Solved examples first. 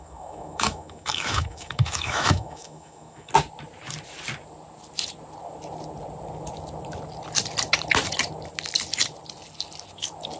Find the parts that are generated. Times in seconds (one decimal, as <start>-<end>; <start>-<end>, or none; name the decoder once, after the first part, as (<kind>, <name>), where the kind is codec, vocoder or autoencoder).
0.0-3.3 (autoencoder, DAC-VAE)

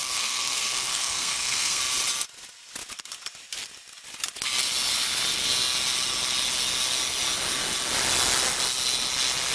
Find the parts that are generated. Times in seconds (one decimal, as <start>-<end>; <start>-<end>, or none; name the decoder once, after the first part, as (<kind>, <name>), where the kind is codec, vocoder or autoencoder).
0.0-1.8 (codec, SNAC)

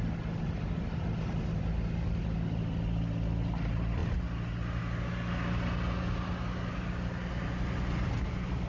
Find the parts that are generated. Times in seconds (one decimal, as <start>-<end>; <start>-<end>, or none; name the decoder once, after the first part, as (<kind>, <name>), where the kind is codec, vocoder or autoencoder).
none